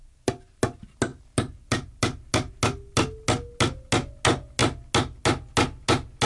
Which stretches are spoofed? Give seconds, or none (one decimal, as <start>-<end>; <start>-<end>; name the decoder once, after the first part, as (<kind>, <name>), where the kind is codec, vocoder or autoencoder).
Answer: none